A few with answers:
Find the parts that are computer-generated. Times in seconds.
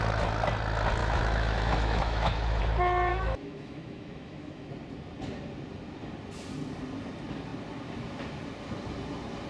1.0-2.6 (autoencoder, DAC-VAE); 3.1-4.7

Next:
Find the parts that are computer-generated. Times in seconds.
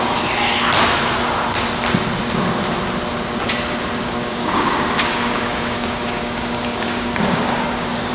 4.0-8.1 (codec, DAC)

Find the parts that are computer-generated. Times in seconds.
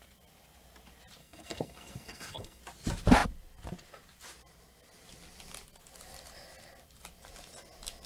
1.2-2.6 (codec, SNAC)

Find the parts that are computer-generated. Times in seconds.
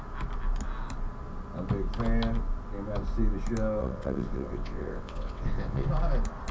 3.8-5.9 (vocoder, WaveNeXt)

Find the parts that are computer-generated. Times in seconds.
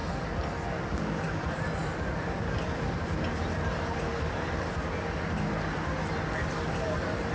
none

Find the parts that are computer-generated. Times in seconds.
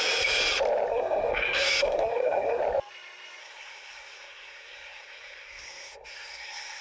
0.9-2.6 (codec, SNAC); 3.4-6.8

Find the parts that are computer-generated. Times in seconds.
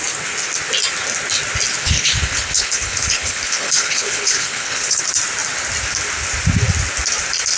1.8-5.0 (codec, HILCodec)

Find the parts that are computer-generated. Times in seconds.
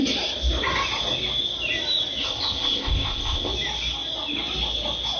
2.2-3.5 (codec, ZipCodec)